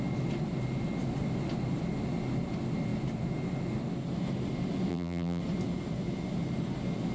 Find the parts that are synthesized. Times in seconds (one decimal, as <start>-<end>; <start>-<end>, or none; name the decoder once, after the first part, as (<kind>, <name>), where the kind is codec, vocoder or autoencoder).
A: 4.9-5.4 (vocoder, BigVGAN v2)